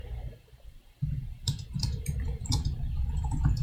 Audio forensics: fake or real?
fake